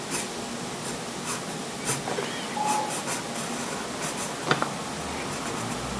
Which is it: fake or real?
real